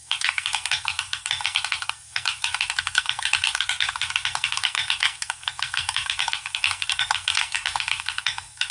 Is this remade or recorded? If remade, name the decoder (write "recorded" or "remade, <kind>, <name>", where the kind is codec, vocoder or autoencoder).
remade, codec, SNAC